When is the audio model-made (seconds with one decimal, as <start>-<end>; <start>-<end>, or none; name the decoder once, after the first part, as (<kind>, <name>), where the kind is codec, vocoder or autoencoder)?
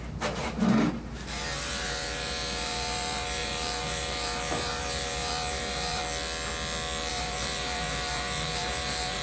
0.0-6.0 (vocoder, BigVGAN v2); 7.1-9.2